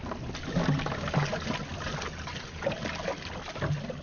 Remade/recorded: recorded